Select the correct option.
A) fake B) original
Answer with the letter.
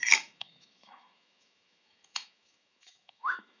A